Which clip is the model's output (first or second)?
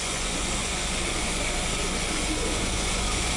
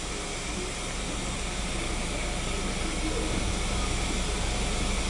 first